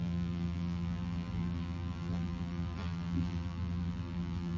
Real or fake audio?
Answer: fake